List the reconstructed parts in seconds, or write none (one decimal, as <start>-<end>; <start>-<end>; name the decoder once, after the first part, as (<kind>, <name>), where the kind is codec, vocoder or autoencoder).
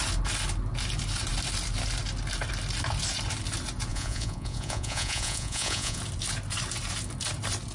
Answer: 3.9-6.0 (vocoder, Vocos)